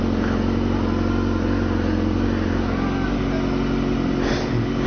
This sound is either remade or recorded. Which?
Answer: recorded